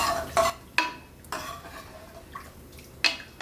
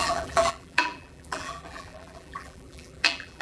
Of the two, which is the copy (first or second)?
second